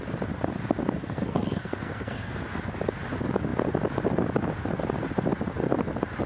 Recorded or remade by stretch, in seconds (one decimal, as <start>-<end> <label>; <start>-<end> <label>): 0.0-1.0 recorded; 1.0-2.4 remade; 2.4-6.3 recorded